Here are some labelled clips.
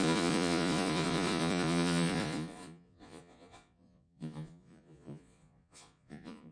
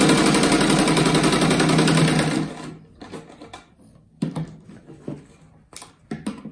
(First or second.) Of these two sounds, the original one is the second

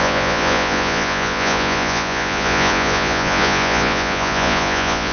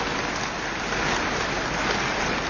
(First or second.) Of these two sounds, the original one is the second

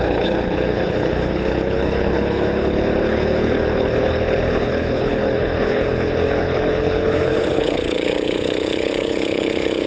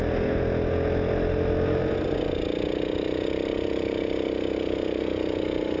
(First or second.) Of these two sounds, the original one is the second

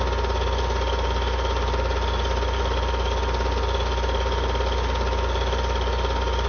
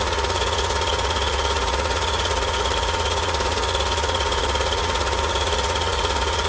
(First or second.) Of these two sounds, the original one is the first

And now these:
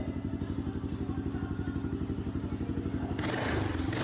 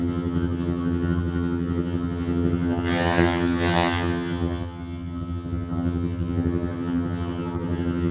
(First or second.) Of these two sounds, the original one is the first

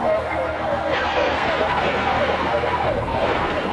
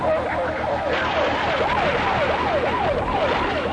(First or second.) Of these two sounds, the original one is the second